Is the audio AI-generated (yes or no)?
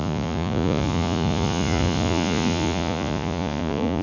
yes